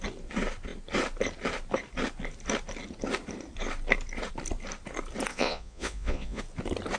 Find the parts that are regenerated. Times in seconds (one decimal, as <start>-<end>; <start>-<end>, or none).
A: 5.3-6.4